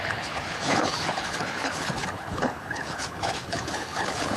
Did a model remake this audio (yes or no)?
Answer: yes